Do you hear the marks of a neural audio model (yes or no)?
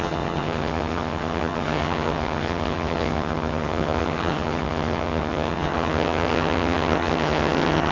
yes